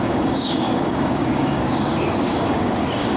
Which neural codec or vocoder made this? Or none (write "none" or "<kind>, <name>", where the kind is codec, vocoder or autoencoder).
codec, DAC